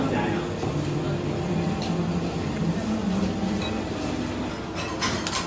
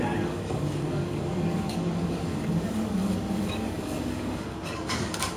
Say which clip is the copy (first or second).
second